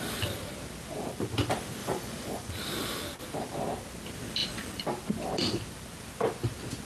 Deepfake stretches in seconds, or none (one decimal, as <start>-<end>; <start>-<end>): 1.8-2.5